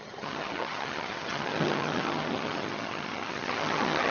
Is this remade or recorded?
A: remade